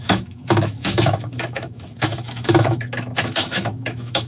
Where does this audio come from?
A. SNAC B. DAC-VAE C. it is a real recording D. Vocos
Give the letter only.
B